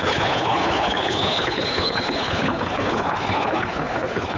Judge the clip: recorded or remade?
remade